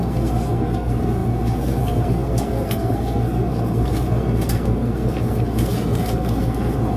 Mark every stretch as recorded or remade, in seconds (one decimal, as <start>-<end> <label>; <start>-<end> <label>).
0.0-7.0 remade